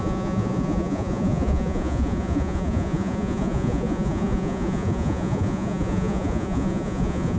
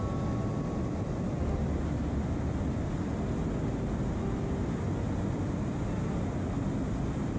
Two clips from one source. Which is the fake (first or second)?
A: first